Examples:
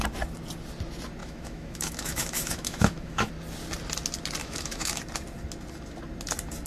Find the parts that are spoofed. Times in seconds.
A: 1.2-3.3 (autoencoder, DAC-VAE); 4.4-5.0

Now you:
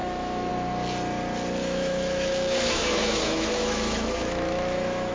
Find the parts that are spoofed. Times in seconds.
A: 0.0-0.5 (autoencoder, DAC-VAE); 1.6-5.1

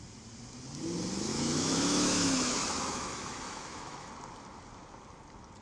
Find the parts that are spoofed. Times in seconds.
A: 1.3-4.1 (autoencoder, DAC-VAE)